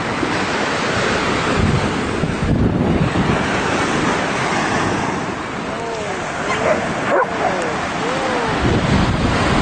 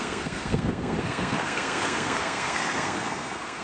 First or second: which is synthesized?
second